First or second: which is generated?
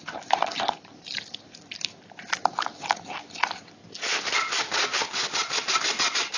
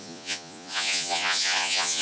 second